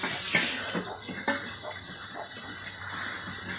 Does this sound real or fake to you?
real